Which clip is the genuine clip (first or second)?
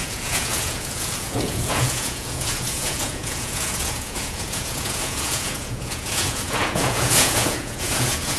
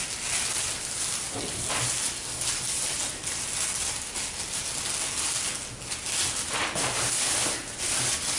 second